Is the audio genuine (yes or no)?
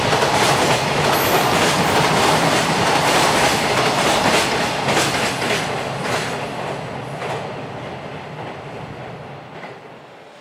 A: yes